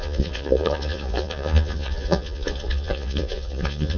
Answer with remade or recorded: remade